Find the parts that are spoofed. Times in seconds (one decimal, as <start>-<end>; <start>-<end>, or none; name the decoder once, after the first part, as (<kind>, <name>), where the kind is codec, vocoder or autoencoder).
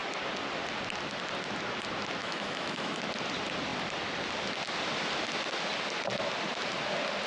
2.2-3.0 (autoencoder, DAC-VAE)